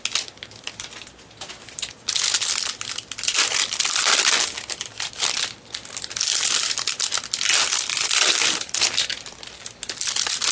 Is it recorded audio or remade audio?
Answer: recorded